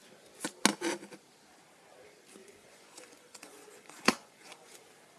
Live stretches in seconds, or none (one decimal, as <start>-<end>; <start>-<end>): 0.0-2.4; 4.8-5.2